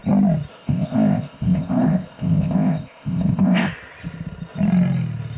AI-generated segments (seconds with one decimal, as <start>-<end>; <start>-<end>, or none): 0.5-3.7